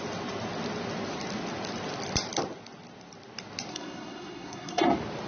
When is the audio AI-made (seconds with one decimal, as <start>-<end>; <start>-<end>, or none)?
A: 3.7-4.8